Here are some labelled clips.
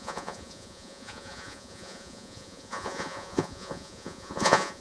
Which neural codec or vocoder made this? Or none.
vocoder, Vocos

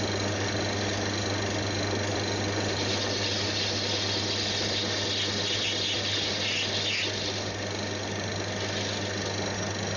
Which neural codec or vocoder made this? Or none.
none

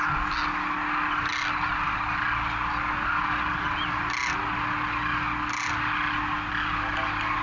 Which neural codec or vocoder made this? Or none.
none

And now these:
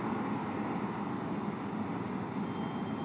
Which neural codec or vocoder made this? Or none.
none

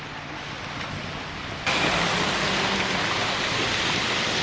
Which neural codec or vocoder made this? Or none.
none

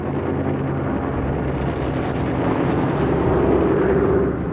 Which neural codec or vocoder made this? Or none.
none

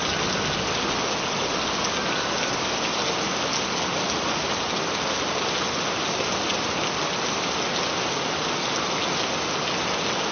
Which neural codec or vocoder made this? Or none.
none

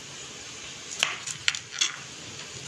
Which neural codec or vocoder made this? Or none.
none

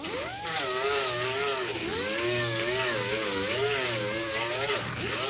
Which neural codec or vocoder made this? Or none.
codec, DAC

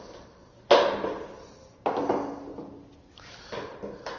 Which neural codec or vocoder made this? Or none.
none